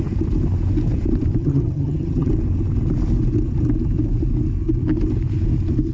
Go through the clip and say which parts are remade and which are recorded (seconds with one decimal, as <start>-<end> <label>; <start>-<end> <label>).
0.0-1.4 recorded; 1.4-2.3 remade; 2.3-5.9 recorded